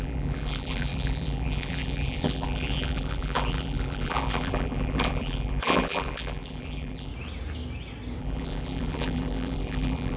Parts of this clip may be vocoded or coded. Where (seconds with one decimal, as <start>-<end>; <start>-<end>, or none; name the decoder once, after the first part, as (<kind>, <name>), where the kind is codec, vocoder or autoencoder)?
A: 0.0-7.1 (vocoder, BigVGAN v2); 8.2-10.2